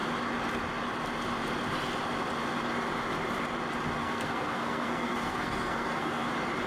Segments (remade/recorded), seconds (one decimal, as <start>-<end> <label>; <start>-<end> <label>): 0.0-4.0 recorded; 4.0-6.3 remade; 6.3-6.7 recorded